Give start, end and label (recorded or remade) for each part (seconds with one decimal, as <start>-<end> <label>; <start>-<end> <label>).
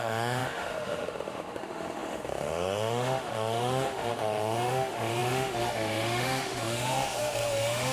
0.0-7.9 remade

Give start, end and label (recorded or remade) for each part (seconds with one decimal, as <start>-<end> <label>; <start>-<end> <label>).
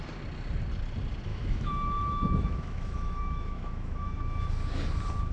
0.0-1.3 recorded; 1.3-4.5 remade; 4.5-5.3 recorded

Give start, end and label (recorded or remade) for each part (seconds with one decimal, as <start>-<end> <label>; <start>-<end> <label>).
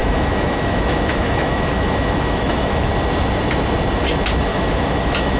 0.0-2.9 remade; 2.9-4.5 recorded; 4.5-5.4 remade